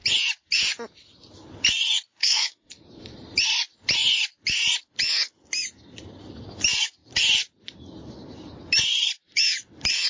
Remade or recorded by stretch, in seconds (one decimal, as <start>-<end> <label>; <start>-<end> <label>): 0.0-2.2 recorded; 2.2-2.7 remade; 2.7-10.1 recorded